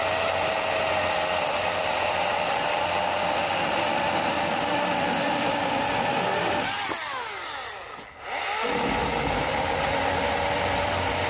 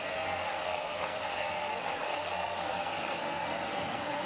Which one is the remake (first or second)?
second